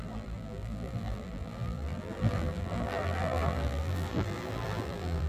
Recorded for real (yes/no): no